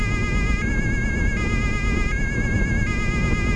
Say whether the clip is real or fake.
real